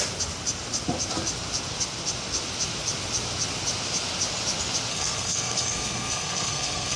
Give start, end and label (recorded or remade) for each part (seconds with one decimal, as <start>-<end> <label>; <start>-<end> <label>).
0.0-4.9 recorded; 4.9-7.0 remade